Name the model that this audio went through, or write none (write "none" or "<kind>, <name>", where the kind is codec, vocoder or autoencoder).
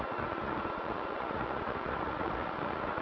vocoder, Vocos